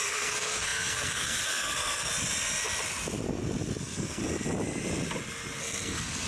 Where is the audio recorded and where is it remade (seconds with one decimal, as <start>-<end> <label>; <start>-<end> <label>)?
0.0-2.1 remade; 2.1-3.8 recorded; 3.8-4.2 remade; 4.2-5.6 recorded; 5.6-6.3 remade